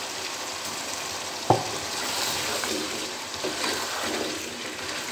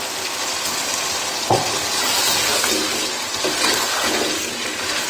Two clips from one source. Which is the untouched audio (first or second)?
second